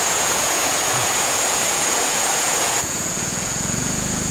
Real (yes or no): no